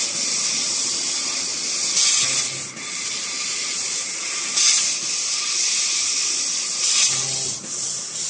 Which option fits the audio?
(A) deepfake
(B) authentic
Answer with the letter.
B